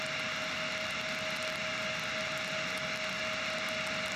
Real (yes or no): yes